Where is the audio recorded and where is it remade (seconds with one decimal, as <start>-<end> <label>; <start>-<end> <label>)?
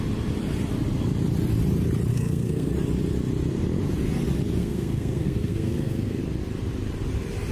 0.0-2.1 recorded; 2.1-2.7 remade; 2.7-4.6 recorded; 4.6-6.2 remade; 6.2-7.5 recorded